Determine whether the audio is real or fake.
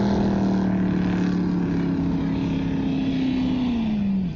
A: real